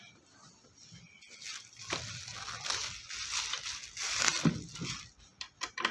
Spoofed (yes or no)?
no